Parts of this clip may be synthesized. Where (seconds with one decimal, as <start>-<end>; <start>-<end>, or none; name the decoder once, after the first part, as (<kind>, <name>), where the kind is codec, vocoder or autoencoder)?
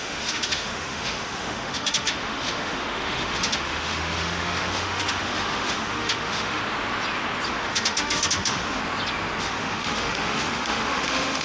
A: 0.0-6.6 (autoencoder, DAC-VAE); 7.5-8.8; 9.4-11.4